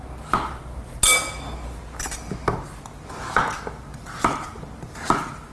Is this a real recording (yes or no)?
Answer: yes